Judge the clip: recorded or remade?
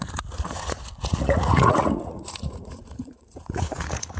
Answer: remade